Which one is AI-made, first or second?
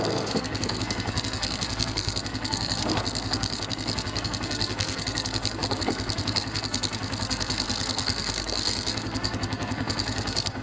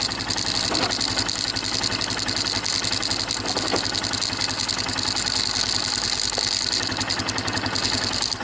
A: first